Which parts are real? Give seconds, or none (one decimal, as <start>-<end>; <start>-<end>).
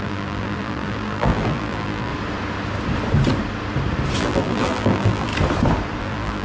2.1-4.2; 5.3-6.0